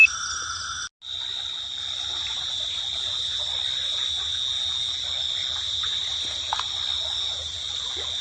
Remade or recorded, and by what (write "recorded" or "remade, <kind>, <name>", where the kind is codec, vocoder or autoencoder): recorded